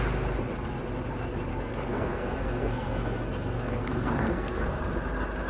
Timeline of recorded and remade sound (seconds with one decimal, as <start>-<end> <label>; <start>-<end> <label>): 0.0-1.5 recorded; 1.5-4.8 remade; 4.8-5.5 recorded